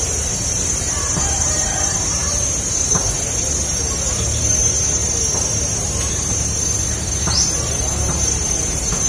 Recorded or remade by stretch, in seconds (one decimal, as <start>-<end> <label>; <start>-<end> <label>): 0.0-5.0 remade; 5.0-7.2 recorded; 7.2-9.1 remade